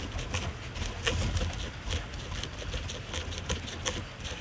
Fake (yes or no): no